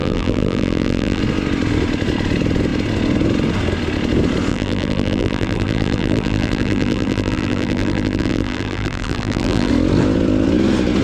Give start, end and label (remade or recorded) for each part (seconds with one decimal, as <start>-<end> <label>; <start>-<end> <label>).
0.0-1.2 remade; 1.2-4.5 recorded; 4.5-9.7 remade; 9.7-11.0 recorded